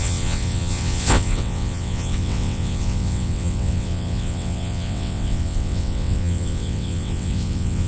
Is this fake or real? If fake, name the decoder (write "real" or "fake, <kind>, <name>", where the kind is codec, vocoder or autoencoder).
fake, vocoder, WaveNeXt